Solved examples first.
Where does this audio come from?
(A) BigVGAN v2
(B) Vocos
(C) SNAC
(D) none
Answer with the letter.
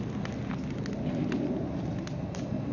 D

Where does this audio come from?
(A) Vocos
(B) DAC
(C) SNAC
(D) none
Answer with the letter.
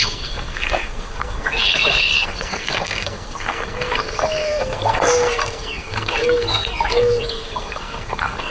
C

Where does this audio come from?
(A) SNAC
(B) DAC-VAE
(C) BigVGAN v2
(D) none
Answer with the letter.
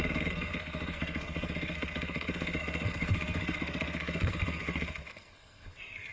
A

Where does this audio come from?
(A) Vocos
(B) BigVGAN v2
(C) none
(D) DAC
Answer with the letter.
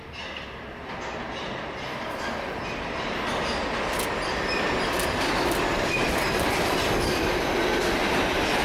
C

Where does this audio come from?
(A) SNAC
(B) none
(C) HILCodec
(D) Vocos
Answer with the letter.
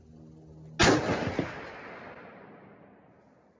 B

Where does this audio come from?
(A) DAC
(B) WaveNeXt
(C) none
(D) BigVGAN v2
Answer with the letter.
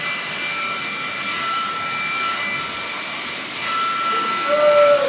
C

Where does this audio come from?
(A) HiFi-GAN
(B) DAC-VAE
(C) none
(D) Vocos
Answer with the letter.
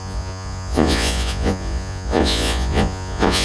D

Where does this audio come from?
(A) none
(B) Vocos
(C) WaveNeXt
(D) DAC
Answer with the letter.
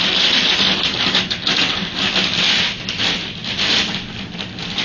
A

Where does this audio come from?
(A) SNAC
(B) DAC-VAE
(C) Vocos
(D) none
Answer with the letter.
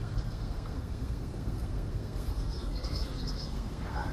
A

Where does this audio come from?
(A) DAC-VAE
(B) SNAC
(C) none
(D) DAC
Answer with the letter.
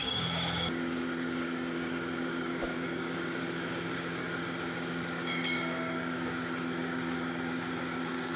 D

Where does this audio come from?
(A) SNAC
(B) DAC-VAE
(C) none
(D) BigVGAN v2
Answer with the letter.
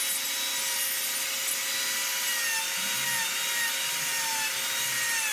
C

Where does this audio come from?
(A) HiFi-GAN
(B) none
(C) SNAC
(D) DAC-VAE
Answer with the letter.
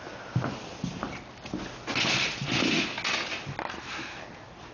B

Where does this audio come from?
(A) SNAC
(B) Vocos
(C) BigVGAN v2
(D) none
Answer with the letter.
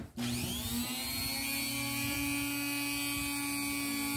D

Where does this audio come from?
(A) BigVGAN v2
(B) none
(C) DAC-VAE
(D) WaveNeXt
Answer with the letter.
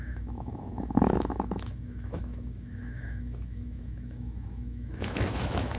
C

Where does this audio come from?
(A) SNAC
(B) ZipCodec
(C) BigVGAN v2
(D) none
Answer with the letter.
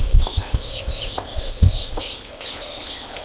B